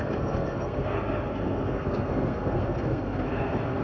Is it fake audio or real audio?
fake